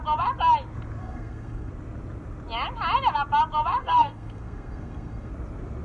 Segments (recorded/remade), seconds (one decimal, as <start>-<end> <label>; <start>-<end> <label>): 0.0-1.0 recorded; 1.0-1.7 remade; 1.7-3.8 recorded; 3.8-5.3 remade; 5.3-5.8 recorded